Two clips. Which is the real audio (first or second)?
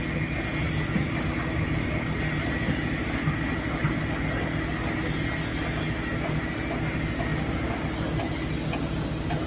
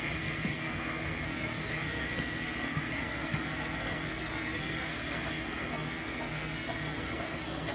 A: first